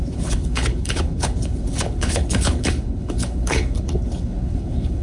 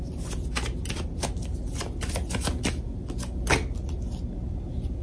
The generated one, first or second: first